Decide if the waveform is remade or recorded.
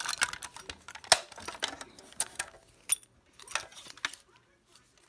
recorded